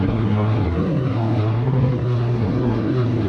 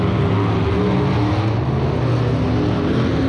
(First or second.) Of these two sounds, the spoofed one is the first